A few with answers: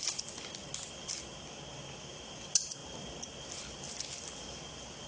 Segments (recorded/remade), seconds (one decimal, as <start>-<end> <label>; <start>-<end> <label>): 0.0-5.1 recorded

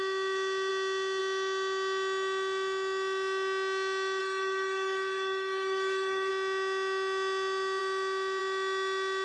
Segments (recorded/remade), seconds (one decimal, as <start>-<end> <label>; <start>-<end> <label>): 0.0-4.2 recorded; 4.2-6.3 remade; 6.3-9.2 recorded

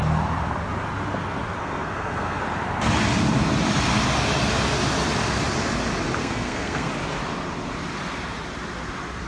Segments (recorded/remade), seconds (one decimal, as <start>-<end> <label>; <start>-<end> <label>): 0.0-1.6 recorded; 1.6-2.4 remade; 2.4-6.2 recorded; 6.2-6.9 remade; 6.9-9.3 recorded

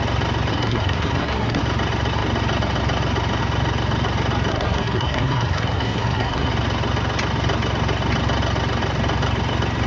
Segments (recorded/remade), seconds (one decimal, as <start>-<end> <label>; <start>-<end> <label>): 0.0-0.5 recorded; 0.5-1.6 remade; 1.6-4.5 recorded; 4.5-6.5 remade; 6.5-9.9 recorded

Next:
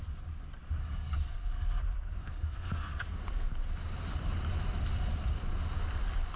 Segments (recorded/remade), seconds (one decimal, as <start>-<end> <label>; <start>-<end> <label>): 0.0-0.8 recorded; 0.8-1.8 remade; 1.8-2.2 recorded; 2.2-3.5 remade; 3.5-6.4 recorded

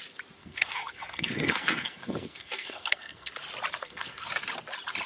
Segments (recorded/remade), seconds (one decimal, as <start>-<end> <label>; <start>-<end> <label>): 0.0-0.4 recorded; 0.4-3.3 remade; 3.3-3.8 recorded; 3.8-4.3 remade; 4.3-5.1 recorded

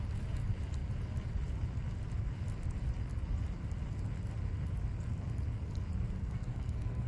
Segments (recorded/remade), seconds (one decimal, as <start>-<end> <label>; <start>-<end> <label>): 0.0-6.2 recorded; 6.2-7.1 remade

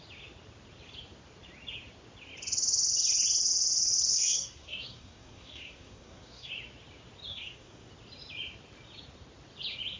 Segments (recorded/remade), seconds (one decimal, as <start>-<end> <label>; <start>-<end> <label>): 0.0-4.1 recorded; 4.1-6.5 remade; 6.5-7.3 recorded; 7.3-7.9 remade; 7.9-10.0 recorded